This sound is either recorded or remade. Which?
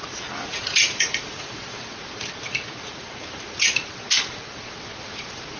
remade